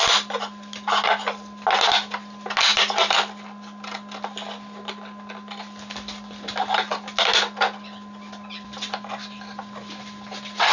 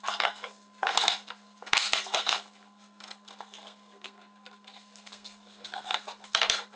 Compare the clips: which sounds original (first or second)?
first